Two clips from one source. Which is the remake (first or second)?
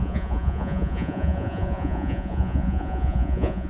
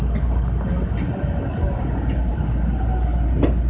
first